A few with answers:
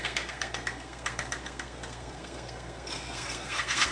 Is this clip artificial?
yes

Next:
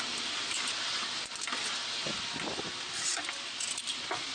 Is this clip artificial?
no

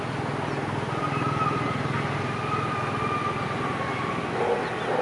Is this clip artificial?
no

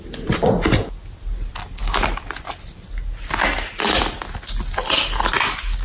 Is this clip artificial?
no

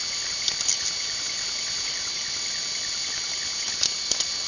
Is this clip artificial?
no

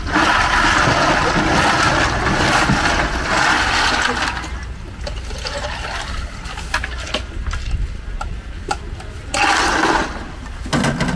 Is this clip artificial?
no